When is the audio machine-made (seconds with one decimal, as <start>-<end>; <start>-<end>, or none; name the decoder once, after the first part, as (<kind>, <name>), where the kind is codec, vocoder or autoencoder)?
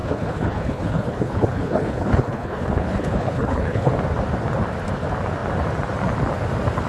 0.0-3.9 (codec, HILCodec)